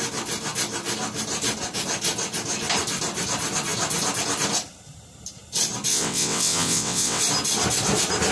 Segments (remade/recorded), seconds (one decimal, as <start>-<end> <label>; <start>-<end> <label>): 0.0-5.9 recorded; 5.9-7.2 remade; 7.2-8.3 recorded